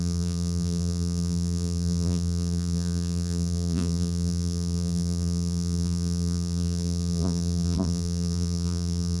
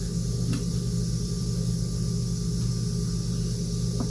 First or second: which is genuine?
second